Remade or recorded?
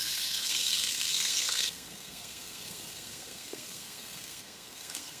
remade